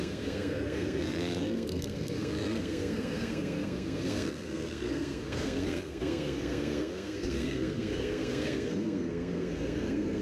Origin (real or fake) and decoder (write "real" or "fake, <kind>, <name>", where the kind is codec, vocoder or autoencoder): fake, codec, SNAC